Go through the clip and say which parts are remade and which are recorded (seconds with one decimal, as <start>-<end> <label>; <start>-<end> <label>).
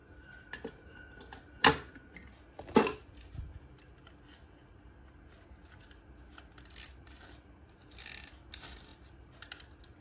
0.0-10.0 recorded